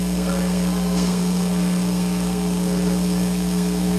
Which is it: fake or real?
fake